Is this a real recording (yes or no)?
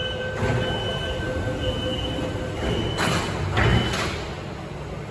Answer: yes